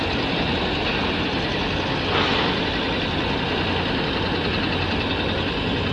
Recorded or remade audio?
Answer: recorded